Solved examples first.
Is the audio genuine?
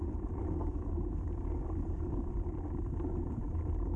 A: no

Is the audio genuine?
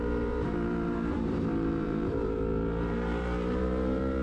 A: no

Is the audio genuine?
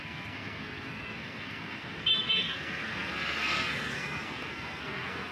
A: no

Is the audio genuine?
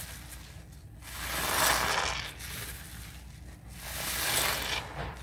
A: yes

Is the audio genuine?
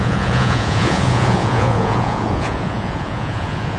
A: no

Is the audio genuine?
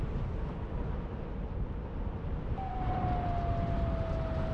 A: yes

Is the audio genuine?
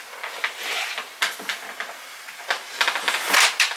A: yes